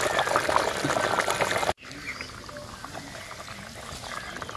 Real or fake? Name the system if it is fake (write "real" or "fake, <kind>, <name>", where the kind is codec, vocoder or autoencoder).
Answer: real